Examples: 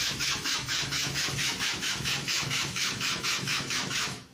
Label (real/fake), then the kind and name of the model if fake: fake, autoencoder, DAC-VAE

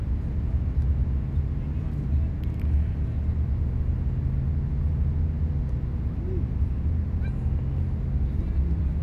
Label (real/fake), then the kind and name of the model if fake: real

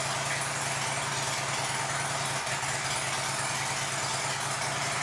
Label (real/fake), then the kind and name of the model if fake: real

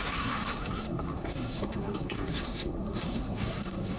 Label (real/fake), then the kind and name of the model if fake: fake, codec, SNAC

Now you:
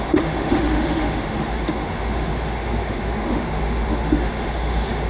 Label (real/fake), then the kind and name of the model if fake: fake, autoencoder, DAC-VAE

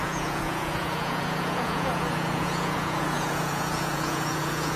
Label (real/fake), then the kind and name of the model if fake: fake, vocoder, Vocos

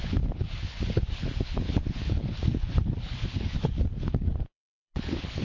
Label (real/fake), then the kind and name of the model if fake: fake, codec, HILCodec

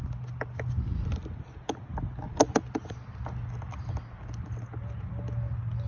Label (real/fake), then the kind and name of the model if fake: real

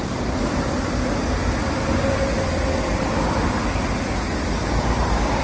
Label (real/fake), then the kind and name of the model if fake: real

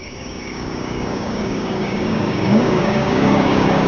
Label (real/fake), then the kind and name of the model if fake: fake, codec, DAC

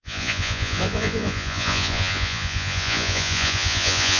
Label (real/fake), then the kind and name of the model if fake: fake, vocoder, Vocos